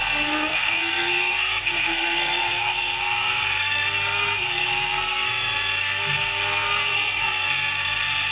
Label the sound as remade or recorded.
remade